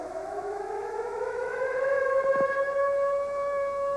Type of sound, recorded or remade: remade